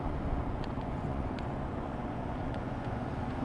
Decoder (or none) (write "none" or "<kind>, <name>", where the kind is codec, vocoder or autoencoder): vocoder, Vocos